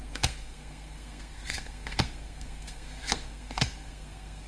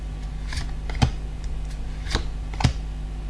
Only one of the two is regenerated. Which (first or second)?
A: first